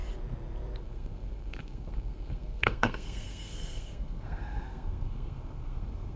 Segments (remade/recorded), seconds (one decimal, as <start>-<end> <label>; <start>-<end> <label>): 0.0-0.8 recorded; 0.8-6.2 remade